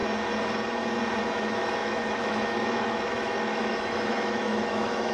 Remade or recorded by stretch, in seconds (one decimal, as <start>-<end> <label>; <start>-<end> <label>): 0.0-1.2 recorded; 1.2-5.1 remade